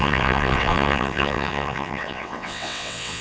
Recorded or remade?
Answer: remade